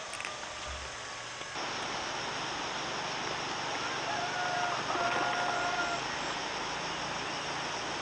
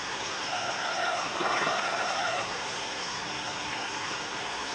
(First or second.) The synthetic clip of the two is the second